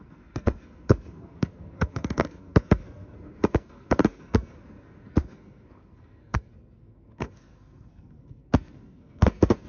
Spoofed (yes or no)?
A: yes